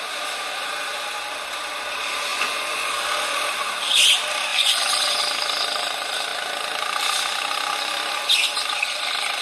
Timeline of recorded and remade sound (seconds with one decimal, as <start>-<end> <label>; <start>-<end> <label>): 0.0-2.3 recorded; 2.3-2.9 remade; 2.9-4.5 recorded; 4.5-5.2 remade; 5.2-9.4 recorded